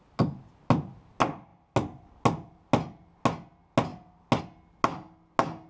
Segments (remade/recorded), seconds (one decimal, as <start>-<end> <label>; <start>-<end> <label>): 0.0-5.7 recorded